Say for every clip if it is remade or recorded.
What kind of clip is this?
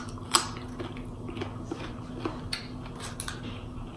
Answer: recorded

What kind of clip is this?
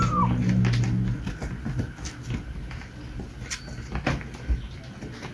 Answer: recorded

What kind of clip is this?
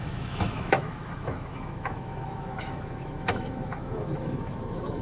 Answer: remade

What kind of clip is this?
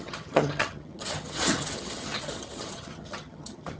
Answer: remade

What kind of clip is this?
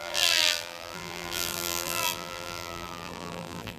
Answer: remade